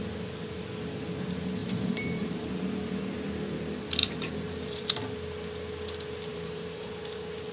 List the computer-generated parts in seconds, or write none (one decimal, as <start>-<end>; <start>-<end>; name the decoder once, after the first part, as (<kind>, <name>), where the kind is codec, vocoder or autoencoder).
1.6-2.5 (vocoder, BigVGAN v2); 4.0-4.9; 6.3-6.9